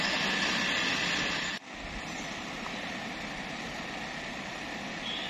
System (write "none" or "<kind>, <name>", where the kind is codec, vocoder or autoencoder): none